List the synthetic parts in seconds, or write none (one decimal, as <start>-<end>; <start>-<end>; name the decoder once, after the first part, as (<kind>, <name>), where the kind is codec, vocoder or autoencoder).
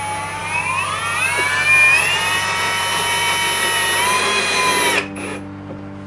none